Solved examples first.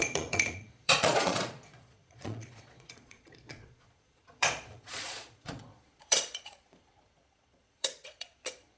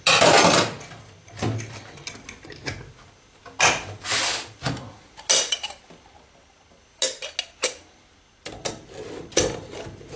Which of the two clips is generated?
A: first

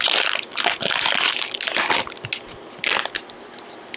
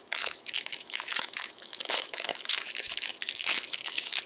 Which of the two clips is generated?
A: second